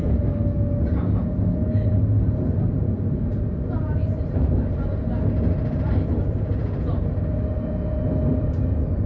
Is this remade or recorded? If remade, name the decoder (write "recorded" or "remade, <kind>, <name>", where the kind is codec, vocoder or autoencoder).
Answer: recorded